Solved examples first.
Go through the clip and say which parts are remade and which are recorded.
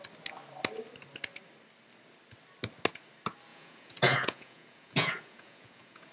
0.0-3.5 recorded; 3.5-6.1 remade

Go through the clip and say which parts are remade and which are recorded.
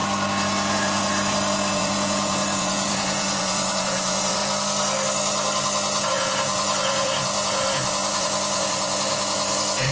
0.0-0.7 recorded; 0.7-1.1 remade; 1.1-1.7 recorded; 1.7-4.4 remade; 4.4-6.1 recorded; 6.1-9.9 remade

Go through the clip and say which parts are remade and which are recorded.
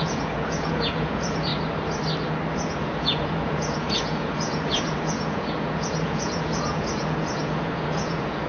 0.0-1.5 remade; 1.5-2.5 recorded; 2.5-8.5 remade